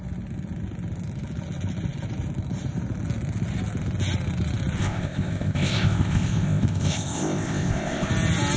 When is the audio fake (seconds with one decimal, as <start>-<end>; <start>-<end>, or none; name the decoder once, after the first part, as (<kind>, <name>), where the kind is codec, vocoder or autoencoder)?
4.8-8.1 (codec, ZipCodec)